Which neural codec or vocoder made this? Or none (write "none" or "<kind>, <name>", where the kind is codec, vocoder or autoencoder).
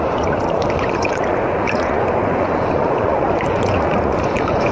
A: vocoder, Vocos